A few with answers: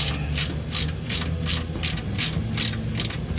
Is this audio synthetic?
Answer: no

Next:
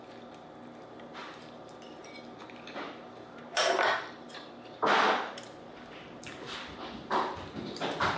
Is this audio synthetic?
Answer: yes